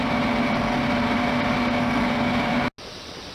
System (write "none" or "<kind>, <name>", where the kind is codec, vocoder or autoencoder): none